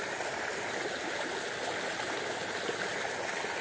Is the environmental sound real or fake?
real